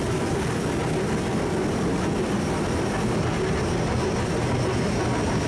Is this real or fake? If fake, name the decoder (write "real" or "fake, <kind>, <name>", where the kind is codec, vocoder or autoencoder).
real